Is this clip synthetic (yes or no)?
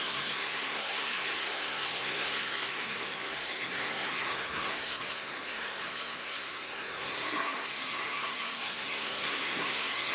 yes